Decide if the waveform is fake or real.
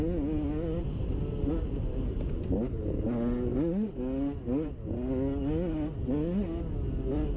real